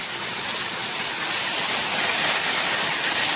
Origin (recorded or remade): remade